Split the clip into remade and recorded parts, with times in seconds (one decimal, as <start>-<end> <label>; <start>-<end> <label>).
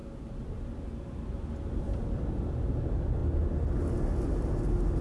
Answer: 0.0-5.0 recorded